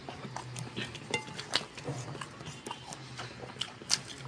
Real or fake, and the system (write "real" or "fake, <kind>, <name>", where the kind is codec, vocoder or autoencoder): real